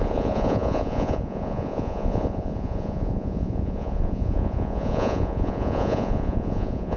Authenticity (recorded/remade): remade